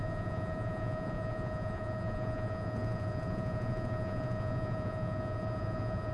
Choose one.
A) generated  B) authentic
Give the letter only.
A